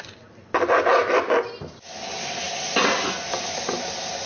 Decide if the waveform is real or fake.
real